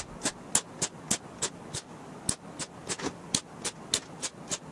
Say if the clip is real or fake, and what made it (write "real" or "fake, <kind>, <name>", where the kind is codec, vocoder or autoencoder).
real